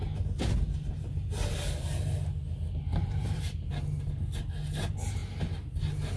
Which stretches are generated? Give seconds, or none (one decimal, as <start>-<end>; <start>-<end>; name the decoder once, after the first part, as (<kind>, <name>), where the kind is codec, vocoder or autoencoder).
3.0-3.7 (vocoder, BigVGAN v2)